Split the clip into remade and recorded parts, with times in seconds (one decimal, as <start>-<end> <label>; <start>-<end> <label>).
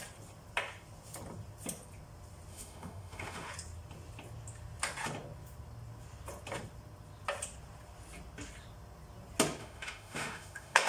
0.0-2.5 recorded; 2.5-3.5 remade; 3.5-9.6 recorded; 9.6-10.9 remade